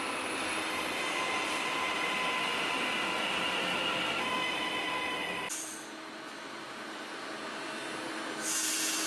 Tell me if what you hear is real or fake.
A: real